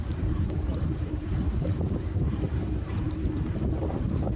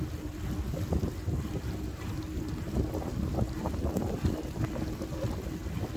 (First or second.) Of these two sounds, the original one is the second